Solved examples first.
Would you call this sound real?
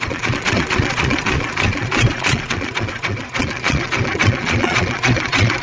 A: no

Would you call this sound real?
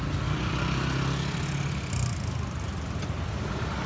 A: yes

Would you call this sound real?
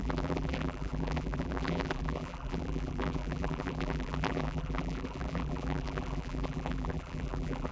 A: no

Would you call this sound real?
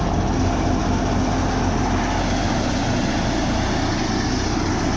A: yes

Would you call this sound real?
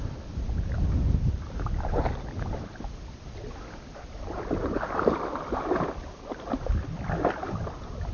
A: yes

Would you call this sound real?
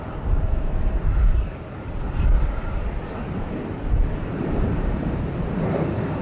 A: no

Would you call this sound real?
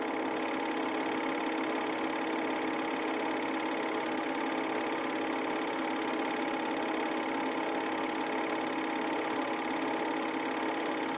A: yes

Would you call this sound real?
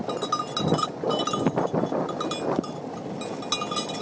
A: yes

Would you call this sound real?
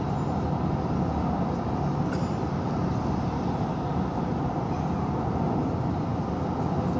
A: yes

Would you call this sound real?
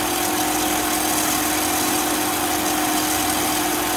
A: yes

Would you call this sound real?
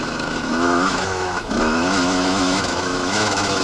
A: no